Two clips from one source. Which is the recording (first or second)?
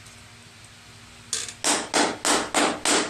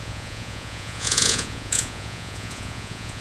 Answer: first